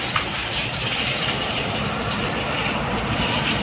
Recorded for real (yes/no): no